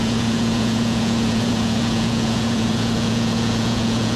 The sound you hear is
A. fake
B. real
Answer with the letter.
A